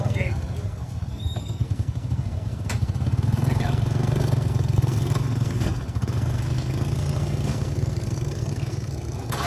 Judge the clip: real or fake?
fake